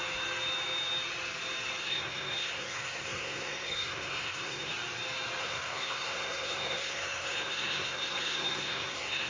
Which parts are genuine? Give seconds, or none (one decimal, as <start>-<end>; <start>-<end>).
0.0-1.8; 4.7-5.4